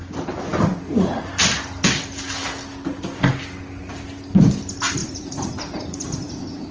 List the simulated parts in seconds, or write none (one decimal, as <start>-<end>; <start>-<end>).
5.0-6.7